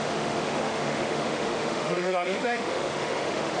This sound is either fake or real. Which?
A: fake